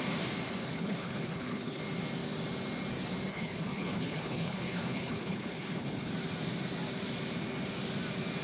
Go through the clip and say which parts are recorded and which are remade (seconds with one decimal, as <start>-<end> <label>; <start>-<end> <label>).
0.0-0.6 recorded; 0.6-1.8 remade; 1.8-3.3 recorded; 3.3-6.1 remade; 6.1-8.4 recorded